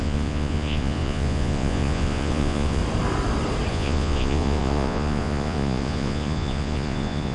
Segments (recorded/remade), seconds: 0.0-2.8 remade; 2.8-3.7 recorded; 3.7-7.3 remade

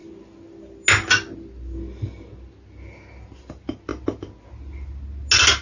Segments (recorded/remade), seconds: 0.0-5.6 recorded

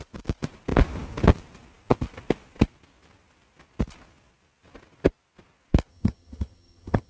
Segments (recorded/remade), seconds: 0.0-5.9 recorded; 5.9-7.1 remade